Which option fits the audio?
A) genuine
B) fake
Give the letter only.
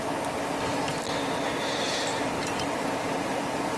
A